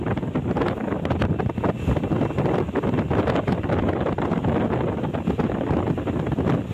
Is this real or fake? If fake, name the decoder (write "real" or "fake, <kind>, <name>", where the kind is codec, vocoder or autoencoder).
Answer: real